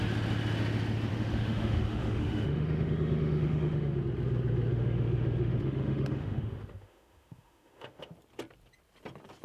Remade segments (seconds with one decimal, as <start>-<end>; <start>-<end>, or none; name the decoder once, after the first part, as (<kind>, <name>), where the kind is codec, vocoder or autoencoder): 1.1-4.0 (autoencoder, DAC-VAE); 4.7-8.1